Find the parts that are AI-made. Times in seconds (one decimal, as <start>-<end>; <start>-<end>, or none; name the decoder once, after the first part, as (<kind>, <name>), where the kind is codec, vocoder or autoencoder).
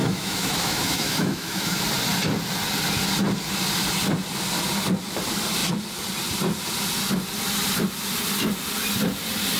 0.0-1.8 (autoencoder, DAC-VAE)